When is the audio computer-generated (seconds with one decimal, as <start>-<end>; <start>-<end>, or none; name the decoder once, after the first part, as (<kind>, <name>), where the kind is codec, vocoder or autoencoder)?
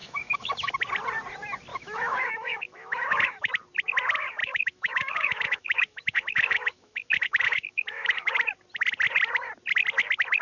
0.0-0.7 (autoencoder, DAC-VAE); 1.7-3.5; 4.4-8.3